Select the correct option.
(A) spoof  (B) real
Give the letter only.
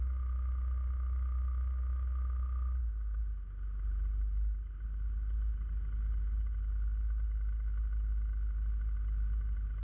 B